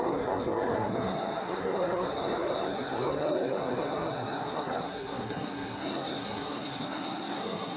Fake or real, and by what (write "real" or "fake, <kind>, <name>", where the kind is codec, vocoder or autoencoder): fake, codec, SNAC